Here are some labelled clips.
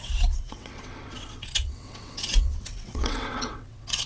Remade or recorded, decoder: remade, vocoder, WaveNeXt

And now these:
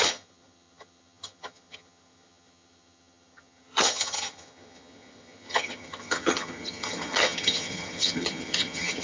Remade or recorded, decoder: remade, vocoder, HiFi-GAN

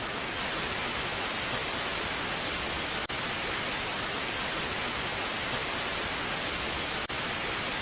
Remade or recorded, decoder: recorded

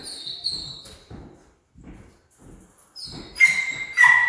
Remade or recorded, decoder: recorded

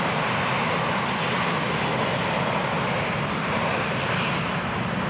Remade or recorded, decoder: recorded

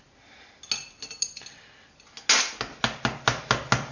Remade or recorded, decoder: recorded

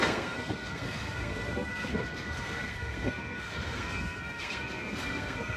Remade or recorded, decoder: remade, codec, SNAC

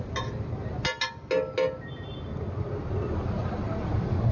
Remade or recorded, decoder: recorded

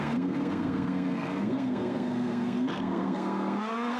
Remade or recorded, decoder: remade, codec, SNAC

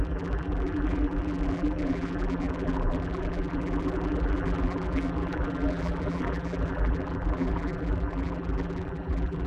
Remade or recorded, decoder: remade, vocoder, BigVGAN v2